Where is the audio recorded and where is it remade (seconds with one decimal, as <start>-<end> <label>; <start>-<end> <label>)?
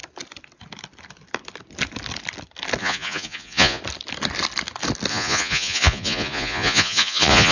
0.0-2.8 recorded; 2.8-3.8 remade; 3.8-5.1 recorded; 5.1-7.5 remade